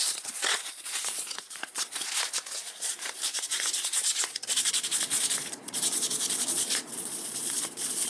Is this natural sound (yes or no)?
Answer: no